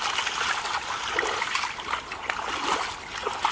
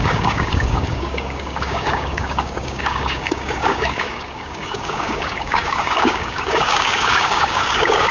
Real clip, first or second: first